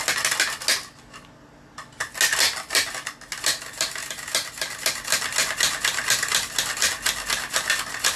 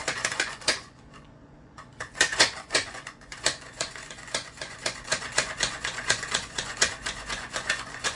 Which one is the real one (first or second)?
first